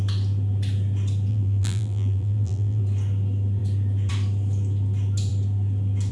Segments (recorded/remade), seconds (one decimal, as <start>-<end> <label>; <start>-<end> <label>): 0.0-1.3 recorded; 1.3-2.8 remade; 2.8-6.1 recorded